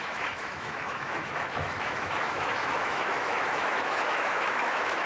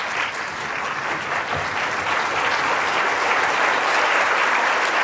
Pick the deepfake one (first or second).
first